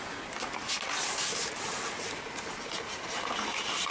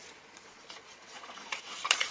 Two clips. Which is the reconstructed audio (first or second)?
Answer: second